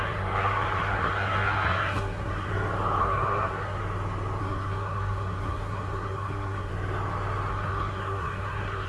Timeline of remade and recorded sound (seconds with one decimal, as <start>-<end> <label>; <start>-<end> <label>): 0.0-2.5 remade; 2.5-3.0 recorded; 3.0-3.8 remade; 3.8-4.4 recorded; 4.4-6.7 remade; 6.7-7.5 recorded; 7.5-8.9 remade